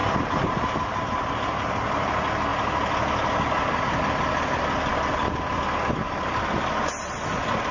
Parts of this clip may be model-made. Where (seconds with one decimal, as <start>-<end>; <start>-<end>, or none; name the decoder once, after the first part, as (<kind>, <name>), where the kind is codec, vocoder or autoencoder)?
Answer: 0.0-1.3 (vocoder, BigVGAN v2)